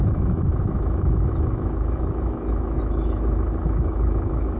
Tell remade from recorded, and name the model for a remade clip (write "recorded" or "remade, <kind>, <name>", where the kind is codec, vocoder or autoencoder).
remade, autoencoder, DAC-VAE